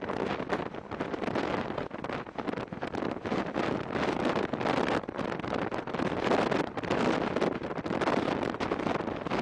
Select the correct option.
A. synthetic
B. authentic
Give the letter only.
B